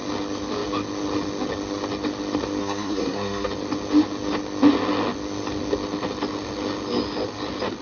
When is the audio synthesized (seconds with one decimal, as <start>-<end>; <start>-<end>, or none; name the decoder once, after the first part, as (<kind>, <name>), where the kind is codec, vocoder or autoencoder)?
2.6-3.5 (codec, SNAC)